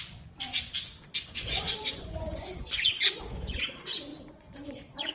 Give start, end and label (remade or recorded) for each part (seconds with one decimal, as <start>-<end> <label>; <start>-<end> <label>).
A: 0.0-5.1 remade

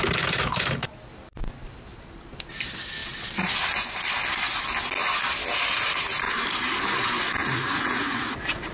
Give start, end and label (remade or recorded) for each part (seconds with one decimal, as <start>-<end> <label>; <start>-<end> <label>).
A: 0.0-7.4 recorded; 7.4-8.7 remade